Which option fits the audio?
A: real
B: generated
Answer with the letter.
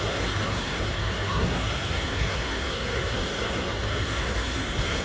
B